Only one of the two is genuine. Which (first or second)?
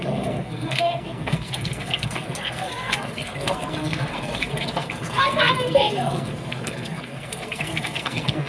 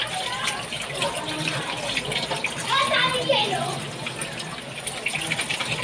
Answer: second